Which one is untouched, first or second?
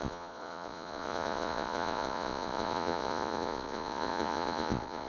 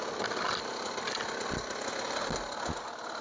second